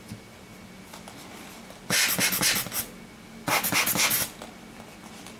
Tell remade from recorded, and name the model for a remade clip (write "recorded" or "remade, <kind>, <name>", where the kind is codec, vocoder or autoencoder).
recorded